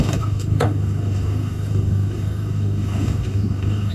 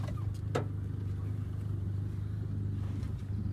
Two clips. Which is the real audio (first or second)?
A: second